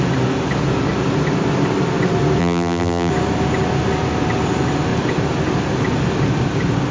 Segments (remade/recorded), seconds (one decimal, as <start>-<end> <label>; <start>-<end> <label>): 0.0-2.4 recorded; 2.4-3.1 remade; 3.1-6.9 recorded